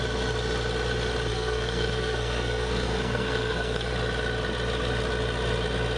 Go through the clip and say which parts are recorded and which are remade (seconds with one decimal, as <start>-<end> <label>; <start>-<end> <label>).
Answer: 0.0-1.3 recorded; 1.3-3.9 remade; 3.9-6.0 recorded